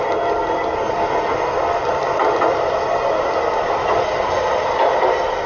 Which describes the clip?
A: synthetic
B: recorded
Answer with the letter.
B